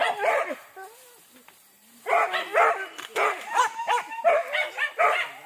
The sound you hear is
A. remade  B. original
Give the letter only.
B